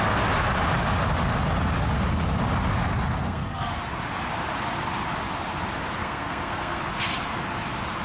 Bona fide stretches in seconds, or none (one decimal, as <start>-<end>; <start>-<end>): 0.0-3.2; 3.8-6.0; 6.8-8.0